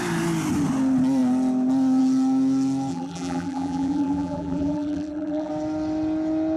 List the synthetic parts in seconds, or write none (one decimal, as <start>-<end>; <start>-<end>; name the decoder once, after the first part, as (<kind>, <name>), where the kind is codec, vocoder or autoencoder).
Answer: 2.9-5.5 (vocoder, BigVGAN v2)